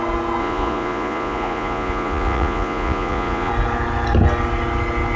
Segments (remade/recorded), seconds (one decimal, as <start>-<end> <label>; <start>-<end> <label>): 0.0-0.4 recorded; 0.4-3.5 remade; 3.5-5.2 recorded